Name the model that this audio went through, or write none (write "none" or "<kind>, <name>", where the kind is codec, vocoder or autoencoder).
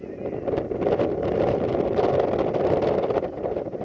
none